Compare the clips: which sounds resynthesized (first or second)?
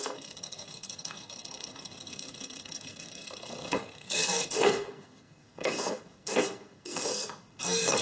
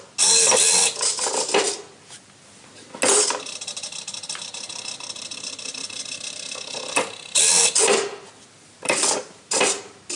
first